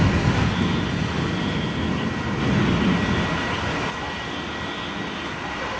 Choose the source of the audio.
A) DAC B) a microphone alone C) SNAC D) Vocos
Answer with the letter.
B